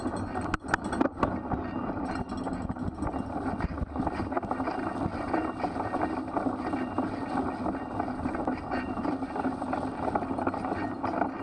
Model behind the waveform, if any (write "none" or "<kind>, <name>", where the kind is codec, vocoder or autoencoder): none